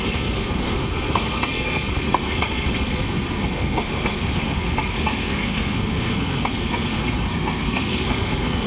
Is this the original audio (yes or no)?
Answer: no